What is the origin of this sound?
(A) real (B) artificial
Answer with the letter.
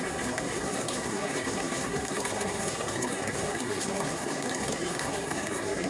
B